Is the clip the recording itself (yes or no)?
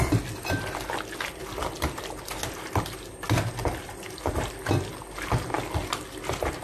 yes